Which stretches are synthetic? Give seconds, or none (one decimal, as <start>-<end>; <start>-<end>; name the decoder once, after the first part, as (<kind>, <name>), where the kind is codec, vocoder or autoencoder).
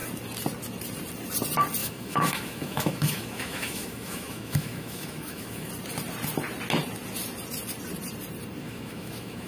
1.8-5.7 (autoencoder, DAC-VAE); 8.6-9.5